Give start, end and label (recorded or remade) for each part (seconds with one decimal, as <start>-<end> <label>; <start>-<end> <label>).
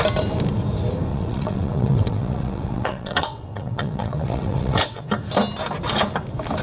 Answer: 0.0-1.1 recorded; 1.1-5.1 remade; 5.1-6.6 recorded